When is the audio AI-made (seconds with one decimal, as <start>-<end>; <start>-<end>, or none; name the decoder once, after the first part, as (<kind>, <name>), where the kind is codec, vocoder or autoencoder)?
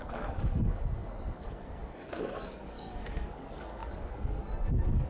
0.0-5.1 (codec, SNAC)